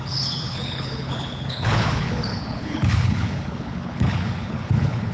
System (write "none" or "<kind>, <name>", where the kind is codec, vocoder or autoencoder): codec, HILCodec